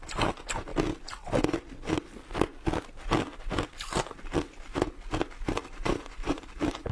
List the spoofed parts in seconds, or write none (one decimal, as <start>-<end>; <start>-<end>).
5.8-6.4